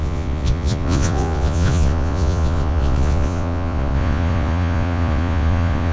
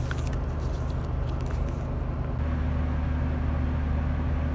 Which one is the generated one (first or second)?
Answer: first